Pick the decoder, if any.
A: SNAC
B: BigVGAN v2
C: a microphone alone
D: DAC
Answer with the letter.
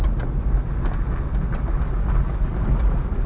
C